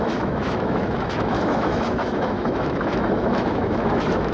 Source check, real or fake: fake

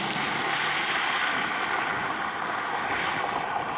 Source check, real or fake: real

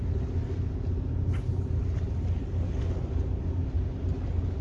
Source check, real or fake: real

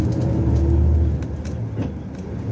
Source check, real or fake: real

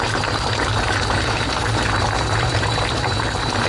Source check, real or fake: fake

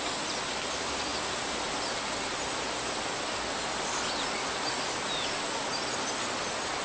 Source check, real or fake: real